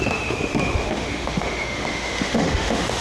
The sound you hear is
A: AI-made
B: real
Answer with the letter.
A